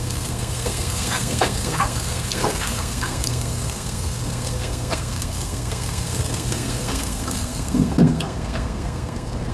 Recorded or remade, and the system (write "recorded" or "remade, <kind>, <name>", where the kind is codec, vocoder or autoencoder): remade, codec, SNAC